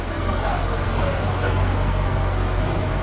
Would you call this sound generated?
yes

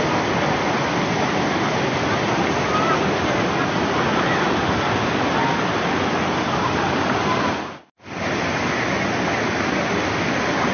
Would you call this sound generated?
no